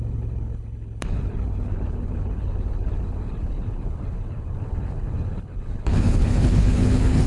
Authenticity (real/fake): fake